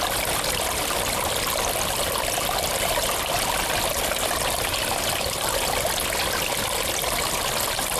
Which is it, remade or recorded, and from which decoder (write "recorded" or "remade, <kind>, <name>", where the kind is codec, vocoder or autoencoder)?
recorded